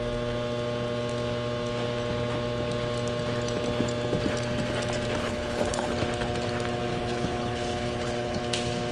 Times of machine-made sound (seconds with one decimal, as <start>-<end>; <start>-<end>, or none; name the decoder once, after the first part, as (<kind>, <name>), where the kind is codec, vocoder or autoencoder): 5.2-5.9 (codec, HILCodec); 6.9-8.4